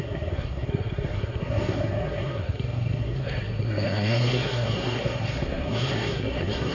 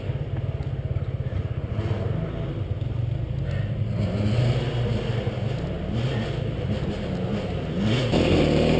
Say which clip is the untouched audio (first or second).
second